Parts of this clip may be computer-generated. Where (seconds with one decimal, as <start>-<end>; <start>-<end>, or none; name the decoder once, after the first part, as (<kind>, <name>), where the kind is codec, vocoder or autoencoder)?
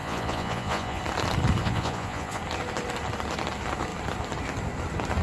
0.0-1.0 (vocoder, Vocos); 1.6-2.4